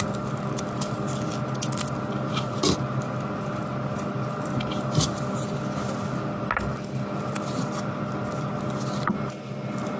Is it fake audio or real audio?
real